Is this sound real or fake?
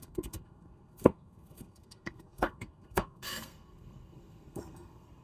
fake